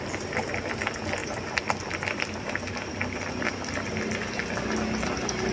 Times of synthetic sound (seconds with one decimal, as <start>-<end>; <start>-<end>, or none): 1.2-4.5